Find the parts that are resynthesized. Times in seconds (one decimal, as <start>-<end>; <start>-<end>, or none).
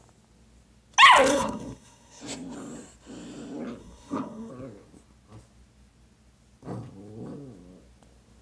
1.3-2.2; 3.8-4.5